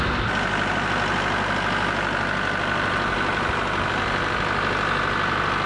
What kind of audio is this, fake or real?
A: real